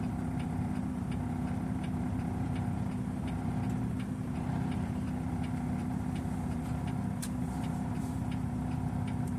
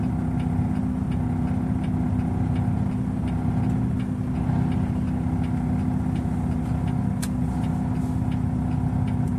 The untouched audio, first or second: second